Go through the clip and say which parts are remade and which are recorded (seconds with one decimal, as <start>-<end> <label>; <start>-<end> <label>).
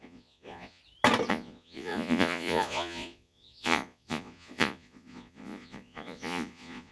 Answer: 0.0-0.8 remade; 0.8-1.3 recorded; 1.3-6.9 remade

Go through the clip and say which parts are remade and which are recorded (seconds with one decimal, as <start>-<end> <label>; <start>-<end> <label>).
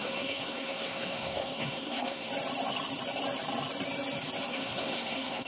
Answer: 0.0-2.3 remade; 2.3-4.5 recorded; 4.5-5.5 remade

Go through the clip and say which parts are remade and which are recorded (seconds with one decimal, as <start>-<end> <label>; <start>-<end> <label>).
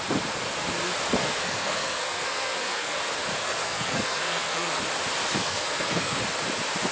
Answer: 0.0-1.2 recorded; 1.2-3.0 remade; 3.0-3.4 recorded; 3.4-4.8 remade; 4.8-5.4 recorded; 5.4-6.2 remade; 6.2-6.9 recorded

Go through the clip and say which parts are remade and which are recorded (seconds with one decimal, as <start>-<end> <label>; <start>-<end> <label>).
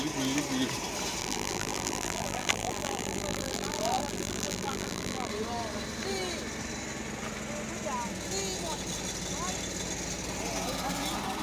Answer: 0.0-1.2 recorded; 1.2-5.3 remade; 5.3-11.4 recorded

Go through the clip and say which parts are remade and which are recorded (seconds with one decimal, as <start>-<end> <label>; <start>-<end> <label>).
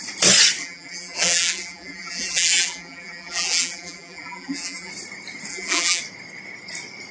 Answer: 0.0-0.6 recorded; 0.6-4.9 remade; 4.9-5.5 recorded; 5.5-6.0 remade; 6.0-7.1 recorded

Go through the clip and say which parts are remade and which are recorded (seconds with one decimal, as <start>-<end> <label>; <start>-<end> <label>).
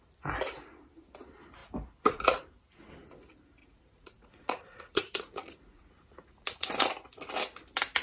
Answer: 0.0-3.6 recorded; 3.6-6.9 remade; 6.9-8.0 recorded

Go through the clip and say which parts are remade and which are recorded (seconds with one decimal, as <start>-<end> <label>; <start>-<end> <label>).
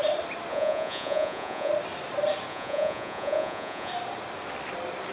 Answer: 0.0-0.5 recorded; 0.5-1.7 remade; 1.7-2.5 recorded; 2.5-3.9 remade; 3.9-5.1 recorded